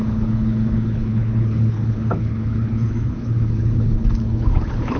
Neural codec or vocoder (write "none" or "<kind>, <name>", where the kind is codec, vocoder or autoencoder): codec, HILCodec